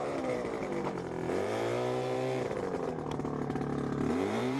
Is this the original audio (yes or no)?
no